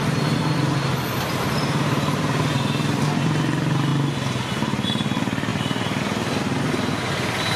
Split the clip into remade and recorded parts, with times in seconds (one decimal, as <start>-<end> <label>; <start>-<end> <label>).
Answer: 0.0-3.9 remade; 3.9-4.5 recorded; 4.5-7.6 remade